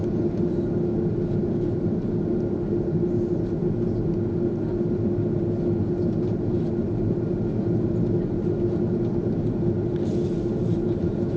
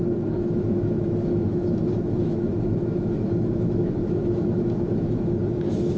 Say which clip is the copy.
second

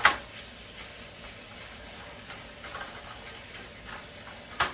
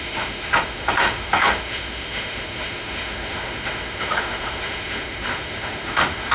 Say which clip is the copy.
second